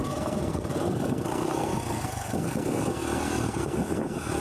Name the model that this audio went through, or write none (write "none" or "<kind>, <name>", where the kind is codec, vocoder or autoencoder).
codec, SNAC